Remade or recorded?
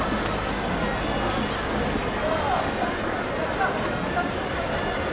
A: recorded